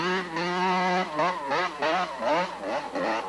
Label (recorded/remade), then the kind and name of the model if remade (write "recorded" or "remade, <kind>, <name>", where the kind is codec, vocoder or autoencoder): recorded